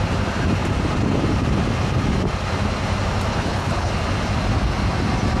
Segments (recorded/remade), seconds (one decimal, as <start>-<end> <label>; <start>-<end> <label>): 0.0-3.3 recorded; 3.3-3.9 remade; 3.9-5.4 recorded